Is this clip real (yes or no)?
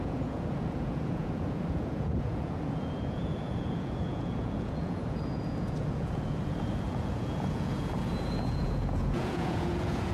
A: no